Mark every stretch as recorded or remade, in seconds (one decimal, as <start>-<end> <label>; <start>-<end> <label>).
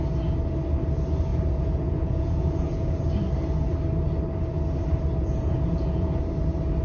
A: 0.0-1.3 recorded; 1.3-3.1 remade; 3.1-5.2 recorded; 5.2-6.2 remade; 6.2-6.8 recorded